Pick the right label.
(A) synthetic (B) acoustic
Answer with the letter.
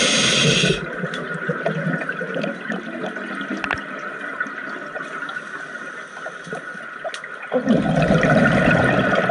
B